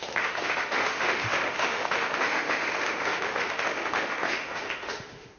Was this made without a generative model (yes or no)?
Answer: no